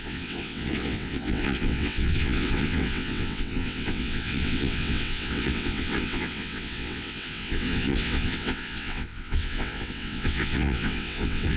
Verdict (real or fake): fake